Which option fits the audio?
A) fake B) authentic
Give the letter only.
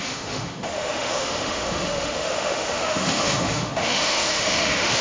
A